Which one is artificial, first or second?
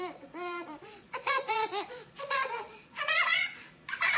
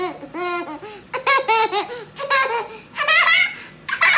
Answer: first